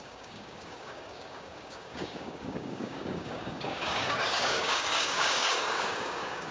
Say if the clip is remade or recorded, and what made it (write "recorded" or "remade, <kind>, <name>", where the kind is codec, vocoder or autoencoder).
remade, codec, DAC